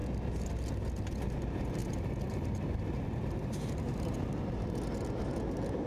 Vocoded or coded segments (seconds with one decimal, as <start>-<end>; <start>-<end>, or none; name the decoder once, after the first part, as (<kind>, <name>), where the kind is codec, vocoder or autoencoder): 1.8-4.1 (vocoder, BigVGAN v2)